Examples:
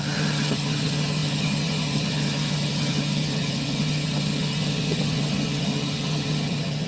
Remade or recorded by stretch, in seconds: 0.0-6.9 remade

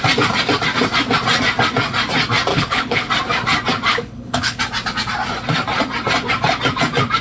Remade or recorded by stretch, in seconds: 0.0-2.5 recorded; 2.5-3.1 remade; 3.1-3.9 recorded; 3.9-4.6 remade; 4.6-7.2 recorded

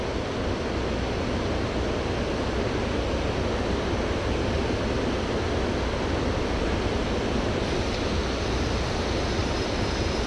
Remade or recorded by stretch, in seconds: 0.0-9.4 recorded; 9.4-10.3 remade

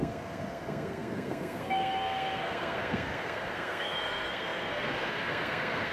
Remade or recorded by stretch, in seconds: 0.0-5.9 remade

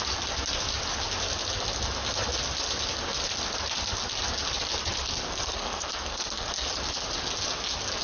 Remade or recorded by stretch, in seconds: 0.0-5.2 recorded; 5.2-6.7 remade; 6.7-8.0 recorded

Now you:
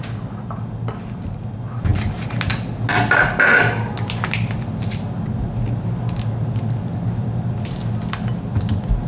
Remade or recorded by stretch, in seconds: 0.0-9.1 recorded

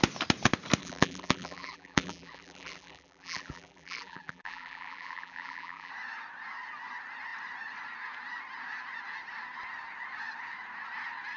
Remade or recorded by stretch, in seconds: 0.0-0.8 recorded; 0.8-5.9 remade; 5.9-11.4 recorded

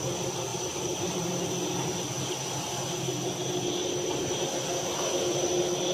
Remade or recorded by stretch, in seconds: 0.0-0.5 recorded; 0.5-1.3 remade; 1.3-5.9 recorded